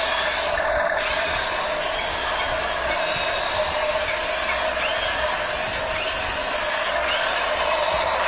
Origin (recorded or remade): recorded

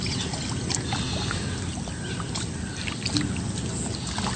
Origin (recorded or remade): recorded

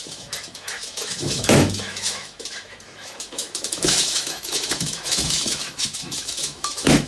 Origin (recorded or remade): remade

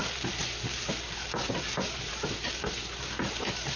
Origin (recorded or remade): recorded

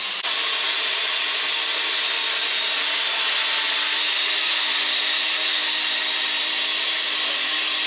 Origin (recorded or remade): recorded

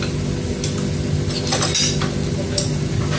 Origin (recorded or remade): recorded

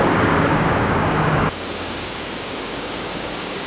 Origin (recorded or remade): remade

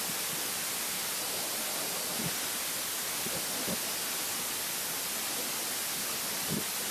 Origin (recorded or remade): recorded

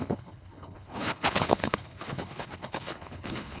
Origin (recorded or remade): remade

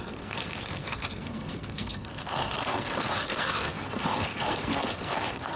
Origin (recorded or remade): remade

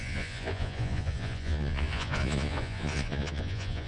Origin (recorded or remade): remade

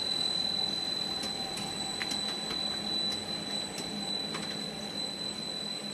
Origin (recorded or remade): recorded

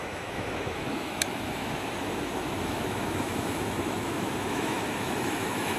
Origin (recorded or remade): remade